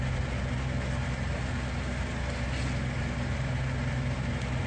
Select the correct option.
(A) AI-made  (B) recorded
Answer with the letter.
B